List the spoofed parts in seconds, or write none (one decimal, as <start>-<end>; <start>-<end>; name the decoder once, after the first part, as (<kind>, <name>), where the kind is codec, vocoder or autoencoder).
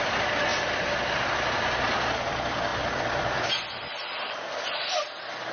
0.0-5.5 (vocoder, BigVGAN v2)